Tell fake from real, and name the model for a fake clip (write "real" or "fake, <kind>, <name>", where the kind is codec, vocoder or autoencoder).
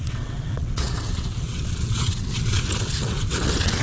fake, vocoder, WaveNeXt